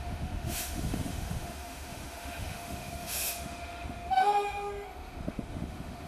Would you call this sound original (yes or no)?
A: no